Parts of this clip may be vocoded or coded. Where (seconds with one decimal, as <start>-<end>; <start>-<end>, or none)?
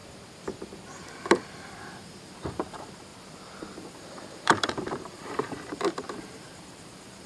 1.8-3.1; 3.9-7.3